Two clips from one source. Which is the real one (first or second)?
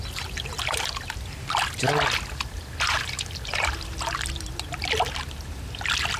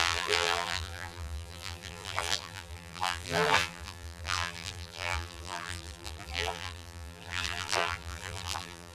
first